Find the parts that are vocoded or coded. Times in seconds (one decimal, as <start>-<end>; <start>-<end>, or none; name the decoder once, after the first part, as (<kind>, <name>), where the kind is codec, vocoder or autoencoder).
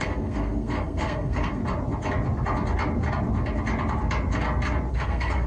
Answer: 0.0-1.6 (codec, SNAC); 4.9-5.5